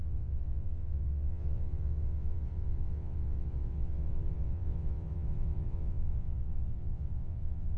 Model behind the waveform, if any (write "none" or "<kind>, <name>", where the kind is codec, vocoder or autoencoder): vocoder, WaveNeXt